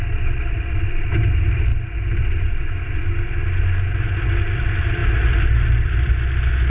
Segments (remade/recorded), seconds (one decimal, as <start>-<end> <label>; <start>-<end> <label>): 0.0-5.0 recorded; 5.0-6.1 remade; 6.1-6.7 recorded